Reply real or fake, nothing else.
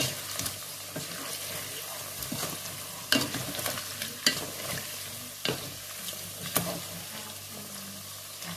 real